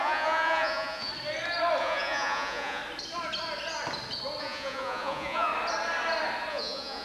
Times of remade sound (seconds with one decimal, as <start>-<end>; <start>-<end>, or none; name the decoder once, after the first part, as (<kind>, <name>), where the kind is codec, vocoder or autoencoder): 0.0-1.1 (vocoder, Vocos); 1.8-2.8; 4.4-5.5; 6.5-7.0